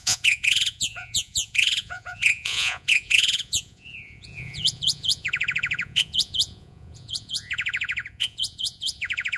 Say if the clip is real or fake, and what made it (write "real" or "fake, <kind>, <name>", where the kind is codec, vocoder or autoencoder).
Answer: fake, vocoder, Vocos